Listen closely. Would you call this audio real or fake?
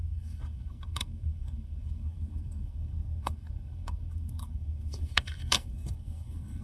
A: fake